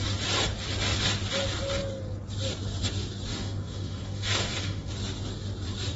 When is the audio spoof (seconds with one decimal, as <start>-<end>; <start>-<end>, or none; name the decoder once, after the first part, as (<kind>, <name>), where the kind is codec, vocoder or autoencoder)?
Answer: 3.3-4.9 (autoencoder, DAC-VAE)